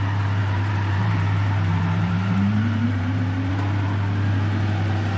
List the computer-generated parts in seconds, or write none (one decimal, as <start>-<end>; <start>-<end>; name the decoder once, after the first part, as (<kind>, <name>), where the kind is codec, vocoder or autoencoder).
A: 0.4-3.5 (vocoder, BigVGAN v2)

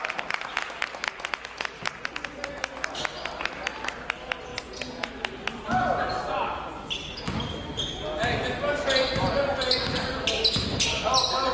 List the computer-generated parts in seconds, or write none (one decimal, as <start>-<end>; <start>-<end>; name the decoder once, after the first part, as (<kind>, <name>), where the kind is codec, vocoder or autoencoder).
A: 4.5-5.1 (vocoder, Vocos)

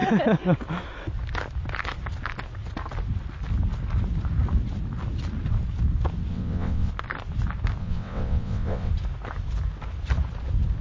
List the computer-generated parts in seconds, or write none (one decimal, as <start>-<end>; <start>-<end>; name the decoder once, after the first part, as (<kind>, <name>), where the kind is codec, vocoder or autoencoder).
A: 6.3-6.9 (vocoder, WaveNeXt); 7.8-8.9

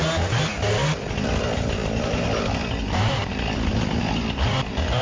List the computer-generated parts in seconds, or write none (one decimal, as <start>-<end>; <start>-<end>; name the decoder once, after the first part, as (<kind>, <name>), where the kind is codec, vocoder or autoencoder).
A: none

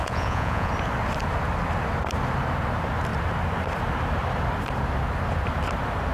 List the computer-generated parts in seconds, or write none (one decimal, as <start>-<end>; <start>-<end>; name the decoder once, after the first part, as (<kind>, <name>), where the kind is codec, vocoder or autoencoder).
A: 0.0-0.7 (vocoder, Vocos)

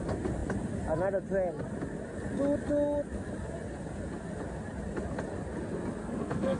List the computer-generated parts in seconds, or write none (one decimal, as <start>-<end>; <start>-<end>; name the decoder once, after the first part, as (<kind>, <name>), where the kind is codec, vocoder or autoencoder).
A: 6.0-6.6 (codec, SNAC)

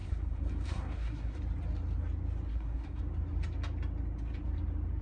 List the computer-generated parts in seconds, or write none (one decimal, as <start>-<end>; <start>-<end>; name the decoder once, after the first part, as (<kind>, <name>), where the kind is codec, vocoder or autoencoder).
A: 0.0-1.4 (codec, SNAC); 2.5-3.0